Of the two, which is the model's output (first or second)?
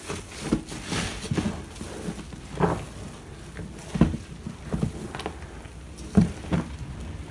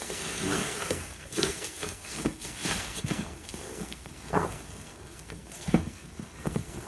second